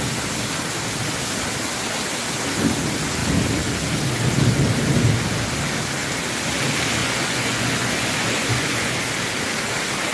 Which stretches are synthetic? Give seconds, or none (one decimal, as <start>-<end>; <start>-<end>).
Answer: 7.0-9.0